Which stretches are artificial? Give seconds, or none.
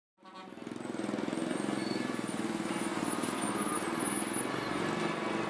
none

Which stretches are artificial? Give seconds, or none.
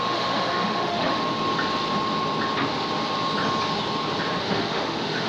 0.0-1.2 (autoencoder, DAC-VAE); 4.4-5.3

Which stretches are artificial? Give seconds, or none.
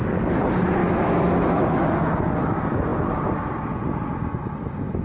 0.8-2.3 (autoencoder, DAC-VAE)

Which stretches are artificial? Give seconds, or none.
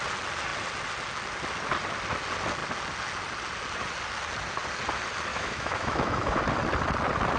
5.3-6.4 (autoencoder, DAC-VAE)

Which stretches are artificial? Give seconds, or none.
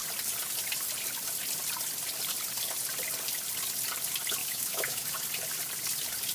4.4-5.1 (autoencoder, DAC-VAE)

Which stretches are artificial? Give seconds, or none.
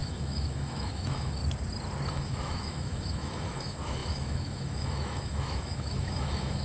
0.0-1.4 (autoencoder, DAC-VAE); 2.1-6.6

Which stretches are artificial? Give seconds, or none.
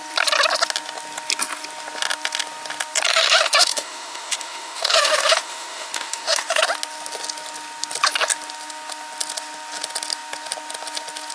3.1-6.6 (autoencoder, DAC-VAE)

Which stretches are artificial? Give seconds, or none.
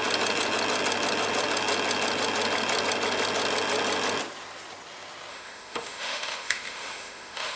5.3-7.6 (autoencoder, DAC-VAE)